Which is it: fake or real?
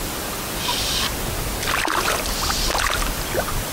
real